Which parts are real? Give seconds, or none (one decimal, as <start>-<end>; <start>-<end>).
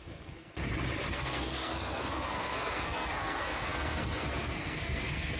0.6-1.1